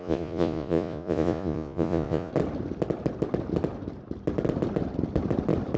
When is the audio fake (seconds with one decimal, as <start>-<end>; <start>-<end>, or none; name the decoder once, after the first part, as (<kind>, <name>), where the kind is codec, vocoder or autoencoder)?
0.0-2.3 (vocoder, Vocos)